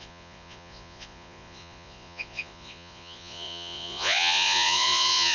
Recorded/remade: remade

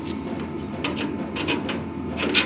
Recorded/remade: recorded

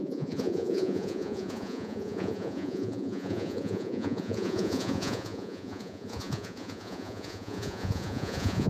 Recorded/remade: remade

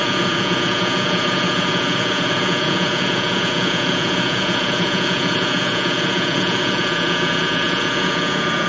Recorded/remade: remade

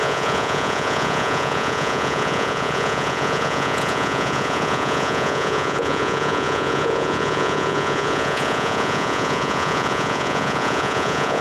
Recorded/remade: remade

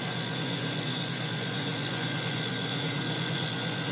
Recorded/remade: remade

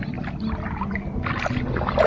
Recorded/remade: recorded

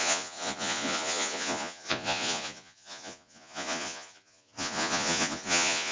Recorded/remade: remade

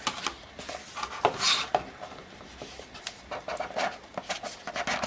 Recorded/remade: recorded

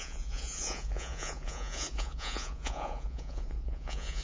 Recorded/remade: remade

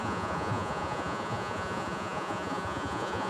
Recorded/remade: remade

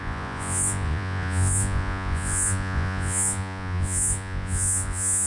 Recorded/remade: remade